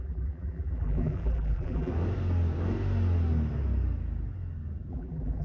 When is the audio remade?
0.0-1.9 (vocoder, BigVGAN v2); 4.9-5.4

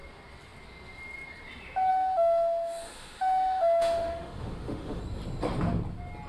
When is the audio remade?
1.9-5.0 (autoencoder, DAC-VAE)

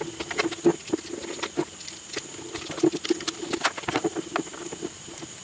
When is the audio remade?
none

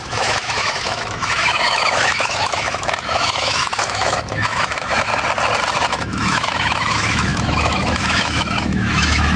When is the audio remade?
0.0-5.1 (autoencoder, DAC-VAE); 5.9-9.4

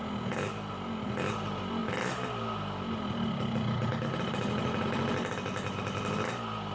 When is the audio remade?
none

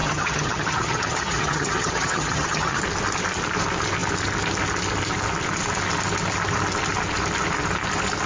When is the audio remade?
0.0-2.8 (vocoder, HiFi-GAN)

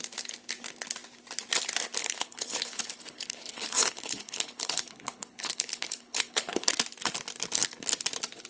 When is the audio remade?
2.0-6.7 (codec, HILCodec)